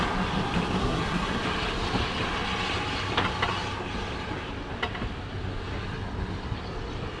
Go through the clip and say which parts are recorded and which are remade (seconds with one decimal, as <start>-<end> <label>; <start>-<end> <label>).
0.0-0.8 recorded; 0.8-1.4 remade; 1.4-7.2 recorded